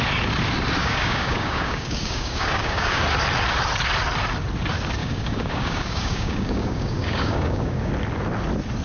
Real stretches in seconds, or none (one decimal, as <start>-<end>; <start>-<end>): 0.0-0.8; 3.0-5.0; 7.9-8.8